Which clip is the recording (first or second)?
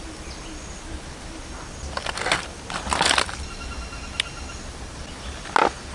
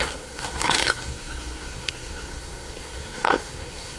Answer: first